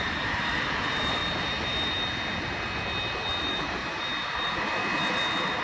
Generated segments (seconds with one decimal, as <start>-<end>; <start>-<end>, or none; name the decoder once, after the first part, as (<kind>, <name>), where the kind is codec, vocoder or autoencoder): 0.0-1.2 (vocoder, BigVGAN v2); 3.4-4.8